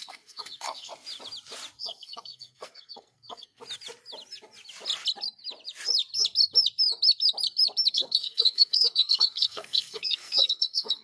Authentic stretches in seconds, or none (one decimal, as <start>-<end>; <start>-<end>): 0.9-1.8; 3.6-7.9